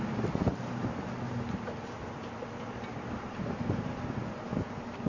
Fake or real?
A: real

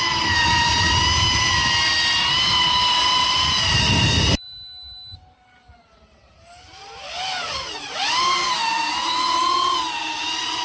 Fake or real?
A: real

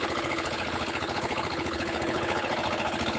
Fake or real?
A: fake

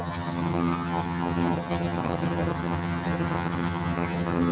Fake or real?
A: fake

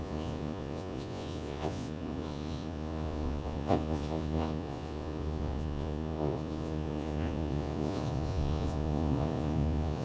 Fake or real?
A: fake